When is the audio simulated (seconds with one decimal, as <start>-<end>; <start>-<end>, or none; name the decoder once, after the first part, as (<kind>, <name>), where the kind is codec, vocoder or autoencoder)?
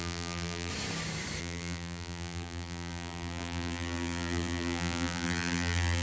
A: 0.0-0.7 (vocoder, BigVGAN v2); 1.4-6.0